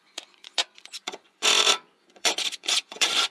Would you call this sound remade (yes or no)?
yes